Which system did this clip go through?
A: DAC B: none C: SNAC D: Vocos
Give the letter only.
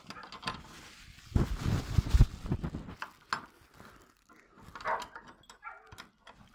B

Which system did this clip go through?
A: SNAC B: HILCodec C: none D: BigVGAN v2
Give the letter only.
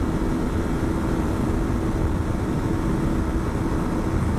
C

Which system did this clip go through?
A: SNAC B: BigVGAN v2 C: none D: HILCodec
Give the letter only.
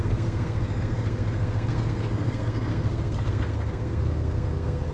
A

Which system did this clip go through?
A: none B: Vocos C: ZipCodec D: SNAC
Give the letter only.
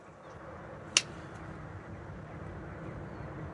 A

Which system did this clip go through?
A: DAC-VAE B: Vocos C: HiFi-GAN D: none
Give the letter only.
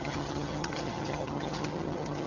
C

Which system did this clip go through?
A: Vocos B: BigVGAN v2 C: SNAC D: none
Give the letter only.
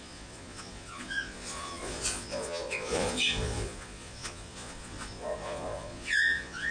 A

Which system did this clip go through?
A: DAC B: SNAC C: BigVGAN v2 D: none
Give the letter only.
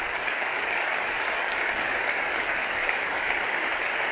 A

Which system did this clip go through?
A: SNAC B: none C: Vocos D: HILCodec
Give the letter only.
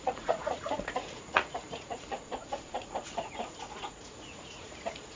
C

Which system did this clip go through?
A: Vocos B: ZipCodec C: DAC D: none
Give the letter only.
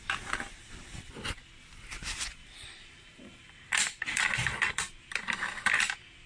D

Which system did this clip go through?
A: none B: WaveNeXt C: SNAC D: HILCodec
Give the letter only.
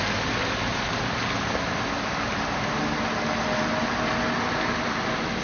A